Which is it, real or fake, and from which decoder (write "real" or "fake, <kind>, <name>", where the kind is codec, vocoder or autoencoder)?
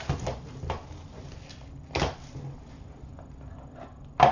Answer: real